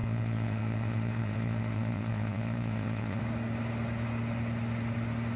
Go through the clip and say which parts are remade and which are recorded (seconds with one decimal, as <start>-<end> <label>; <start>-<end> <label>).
0.0-3.2 remade; 3.2-5.4 recorded